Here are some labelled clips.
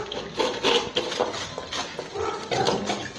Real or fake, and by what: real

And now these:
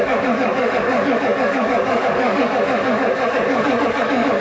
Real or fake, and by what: fake, codec, DAC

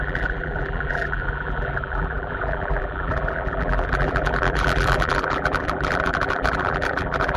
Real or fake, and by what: fake, vocoder, BigVGAN v2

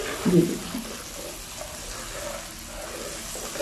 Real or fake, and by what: real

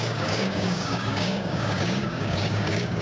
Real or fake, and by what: fake, codec, DAC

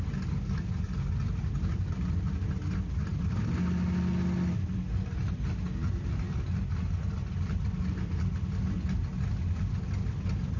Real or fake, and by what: real